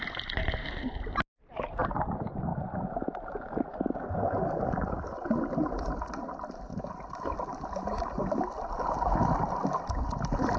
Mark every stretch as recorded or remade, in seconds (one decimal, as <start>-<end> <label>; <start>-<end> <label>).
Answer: 0.0-10.6 recorded